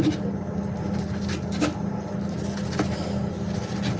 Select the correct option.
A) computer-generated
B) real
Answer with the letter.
B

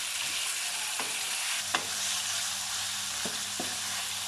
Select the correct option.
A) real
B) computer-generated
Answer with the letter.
B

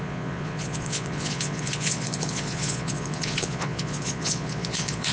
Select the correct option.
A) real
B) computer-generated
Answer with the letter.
B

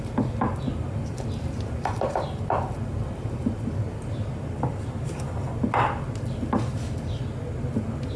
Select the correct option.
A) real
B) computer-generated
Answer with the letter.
A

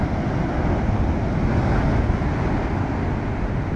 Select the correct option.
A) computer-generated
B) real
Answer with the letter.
B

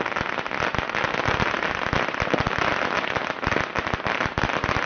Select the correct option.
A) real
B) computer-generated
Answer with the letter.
A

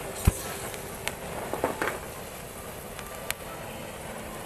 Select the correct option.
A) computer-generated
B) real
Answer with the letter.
B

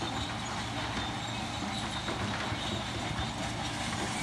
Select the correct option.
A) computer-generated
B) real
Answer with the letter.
B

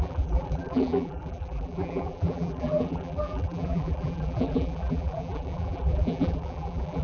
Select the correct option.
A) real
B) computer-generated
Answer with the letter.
B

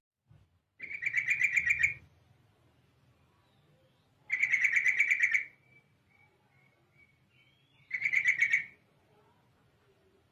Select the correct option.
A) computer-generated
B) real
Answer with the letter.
B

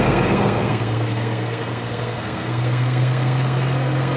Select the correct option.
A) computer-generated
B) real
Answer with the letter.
A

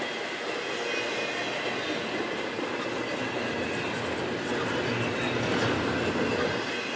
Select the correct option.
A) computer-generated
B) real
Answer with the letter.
B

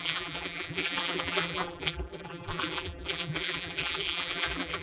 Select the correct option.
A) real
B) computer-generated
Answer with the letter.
B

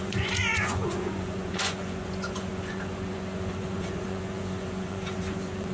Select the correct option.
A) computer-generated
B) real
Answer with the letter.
A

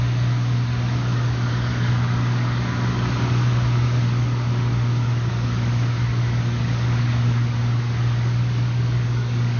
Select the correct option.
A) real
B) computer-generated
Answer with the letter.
B